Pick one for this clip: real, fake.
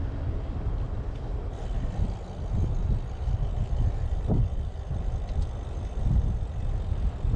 real